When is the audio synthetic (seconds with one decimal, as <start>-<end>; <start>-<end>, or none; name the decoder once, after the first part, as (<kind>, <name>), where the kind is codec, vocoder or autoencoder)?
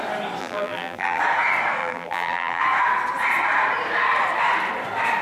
0.4-1.2 (vocoder, BigVGAN v2); 1.8-2.6